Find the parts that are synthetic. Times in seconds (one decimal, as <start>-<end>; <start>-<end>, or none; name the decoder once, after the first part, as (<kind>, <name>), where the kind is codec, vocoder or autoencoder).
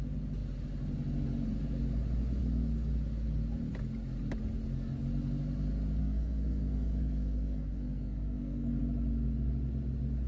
6.0-8.8 (codec, SNAC)